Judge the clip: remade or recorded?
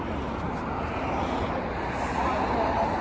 recorded